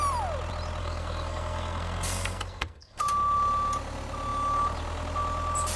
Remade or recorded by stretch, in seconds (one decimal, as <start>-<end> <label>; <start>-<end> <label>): 0.0-0.8 recorded; 0.8-3.0 remade; 3.0-5.8 recorded

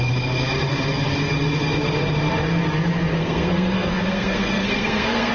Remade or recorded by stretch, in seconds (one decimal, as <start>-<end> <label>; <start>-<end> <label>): 0.0-3.1 recorded; 3.1-5.3 remade

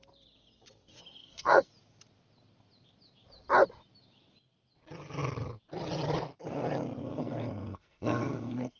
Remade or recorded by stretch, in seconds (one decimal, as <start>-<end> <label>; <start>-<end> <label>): 0.0-1.2 recorded; 1.2-1.7 remade; 1.7-7.0 recorded; 7.0-8.8 remade

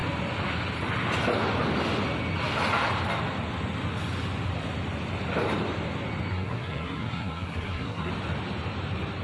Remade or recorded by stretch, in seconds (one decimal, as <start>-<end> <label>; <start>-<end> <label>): 0.0-6.3 recorded; 6.3-8.1 remade; 8.1-9.2 recorded

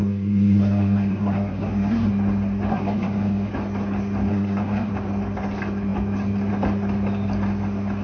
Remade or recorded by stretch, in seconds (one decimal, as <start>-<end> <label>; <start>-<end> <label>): 0.0-2.1 remade; 2.1-2.7 recorded; 2.7-3.5 remade; 3.5-4.3 recorded; 4.3-4.9 remade; 4.9-8.0 recorded

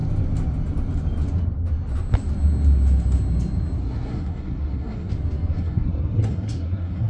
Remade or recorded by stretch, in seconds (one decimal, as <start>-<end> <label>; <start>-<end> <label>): 0.0-3.8 recorded; 3.8-5.1 remade; 5.1-5.5 recorded; 5.5-7.1 remade

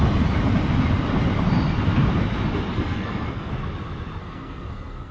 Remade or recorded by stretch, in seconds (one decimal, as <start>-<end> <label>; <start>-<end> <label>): 0.0-2.7 recorded; 2.7-3.5 remade; 3.5-4.2 recorded; 4.2-5.1 remade

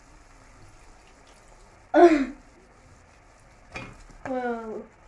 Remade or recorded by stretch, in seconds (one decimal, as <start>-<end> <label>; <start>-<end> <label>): 0.0-5.1 recorded